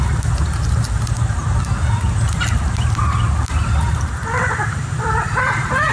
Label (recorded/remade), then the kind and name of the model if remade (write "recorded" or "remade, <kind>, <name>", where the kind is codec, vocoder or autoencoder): recorded